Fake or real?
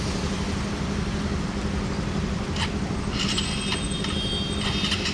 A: real